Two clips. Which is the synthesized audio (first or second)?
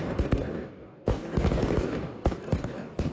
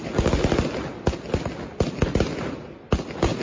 first